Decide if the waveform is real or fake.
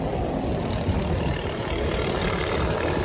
real